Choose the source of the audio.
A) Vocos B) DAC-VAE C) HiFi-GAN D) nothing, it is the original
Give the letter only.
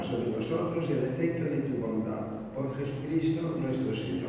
D